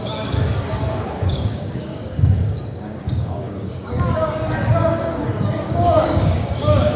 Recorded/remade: remade